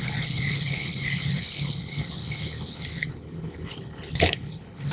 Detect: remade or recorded remade